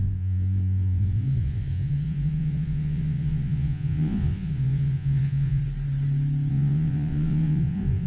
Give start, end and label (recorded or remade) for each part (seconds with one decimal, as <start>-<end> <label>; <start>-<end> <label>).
0.0-5.6 remade; 5.6-6.5 recorded; 6.5-8.1 remade